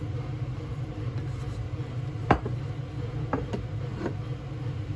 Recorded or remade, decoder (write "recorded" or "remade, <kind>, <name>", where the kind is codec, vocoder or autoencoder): recorded